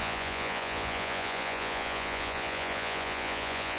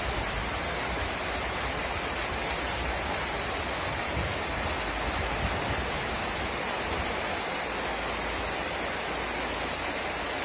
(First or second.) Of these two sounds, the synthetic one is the first